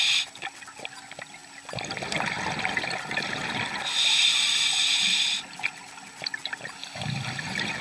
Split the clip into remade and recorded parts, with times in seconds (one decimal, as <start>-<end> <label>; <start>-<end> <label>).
0.0-7.8 recorded